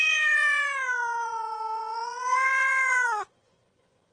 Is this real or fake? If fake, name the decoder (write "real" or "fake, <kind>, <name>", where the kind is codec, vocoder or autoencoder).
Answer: fake, vocoder, Vocos